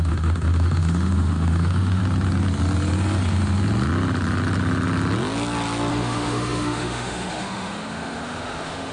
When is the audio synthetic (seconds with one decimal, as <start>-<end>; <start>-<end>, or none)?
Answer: 0.0-2.0; 5.9-8.9